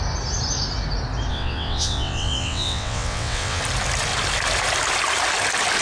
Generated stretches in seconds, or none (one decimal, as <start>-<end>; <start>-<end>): 1.3-3.6